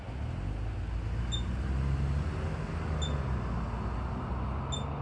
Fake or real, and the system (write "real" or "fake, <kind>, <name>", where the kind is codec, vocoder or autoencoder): real